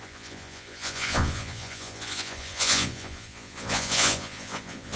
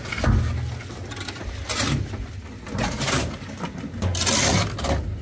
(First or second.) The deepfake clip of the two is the first